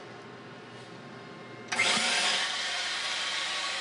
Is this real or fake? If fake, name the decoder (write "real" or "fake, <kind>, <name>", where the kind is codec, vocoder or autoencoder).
real